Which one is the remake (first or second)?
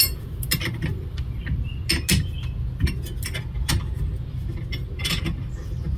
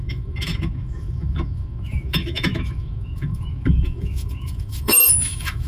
second